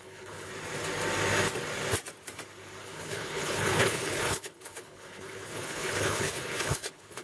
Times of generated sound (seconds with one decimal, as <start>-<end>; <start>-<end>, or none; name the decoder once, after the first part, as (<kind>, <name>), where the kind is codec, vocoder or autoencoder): 0.0-0.5 (codec, HILCodec); 2.8-7.2

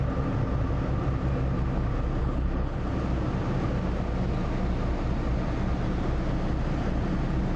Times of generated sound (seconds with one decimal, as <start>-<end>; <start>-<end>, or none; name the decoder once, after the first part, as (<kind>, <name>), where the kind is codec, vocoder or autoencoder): 2.2-2.8 (codec, HILCodec)

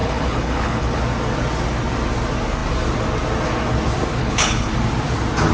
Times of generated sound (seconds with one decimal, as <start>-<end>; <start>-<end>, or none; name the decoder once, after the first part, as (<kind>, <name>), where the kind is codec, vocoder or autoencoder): 0.0-1.0 (codec, HILCodec); 4.2-4.7

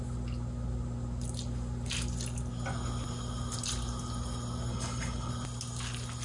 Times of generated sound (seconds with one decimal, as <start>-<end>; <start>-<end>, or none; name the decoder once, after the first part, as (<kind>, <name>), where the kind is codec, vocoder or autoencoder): 4.7-5.3 (codec, HILCodec)

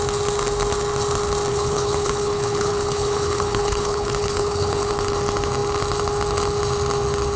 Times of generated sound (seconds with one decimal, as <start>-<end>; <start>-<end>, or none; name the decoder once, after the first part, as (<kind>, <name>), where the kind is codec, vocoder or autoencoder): 1.5-4.9 (codec, HILCodec)